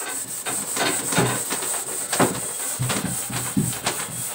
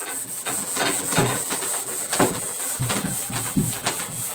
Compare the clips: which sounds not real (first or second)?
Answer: second